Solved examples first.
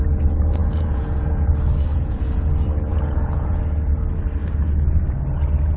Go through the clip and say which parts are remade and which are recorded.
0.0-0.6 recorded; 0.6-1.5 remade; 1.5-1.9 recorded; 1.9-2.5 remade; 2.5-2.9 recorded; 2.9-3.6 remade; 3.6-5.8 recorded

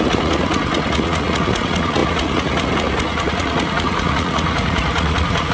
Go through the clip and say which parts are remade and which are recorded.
0.0-5.5 remade

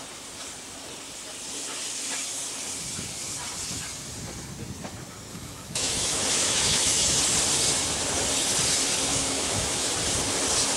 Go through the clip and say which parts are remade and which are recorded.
0.0-5.3 recorded; 5.3-7.2 remade; 7.2-9.1 recorded; 9.1-9.9 remade; 9.9-10.8 recorded

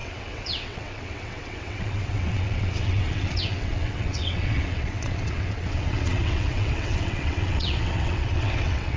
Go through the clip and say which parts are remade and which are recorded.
0.0-9.0 remade